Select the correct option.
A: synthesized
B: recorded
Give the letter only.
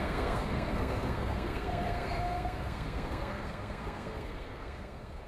A